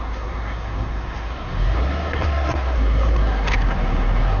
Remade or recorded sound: remade